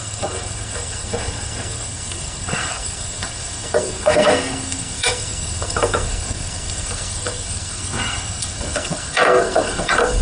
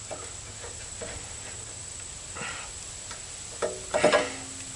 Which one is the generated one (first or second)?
first